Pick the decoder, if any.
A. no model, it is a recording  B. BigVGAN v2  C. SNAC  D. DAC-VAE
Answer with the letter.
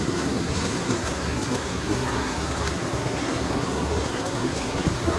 C